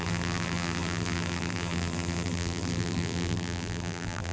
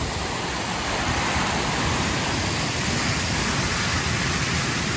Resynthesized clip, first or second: first